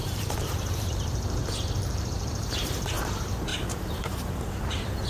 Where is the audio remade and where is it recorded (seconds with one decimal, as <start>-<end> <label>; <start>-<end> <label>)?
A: 0.0-5.1 remade